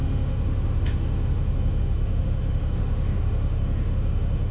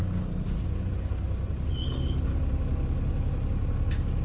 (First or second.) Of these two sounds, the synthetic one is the first